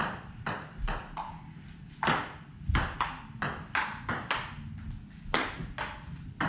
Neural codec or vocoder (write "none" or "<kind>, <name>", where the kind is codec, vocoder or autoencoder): none